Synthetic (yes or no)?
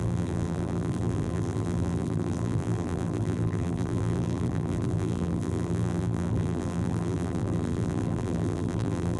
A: yes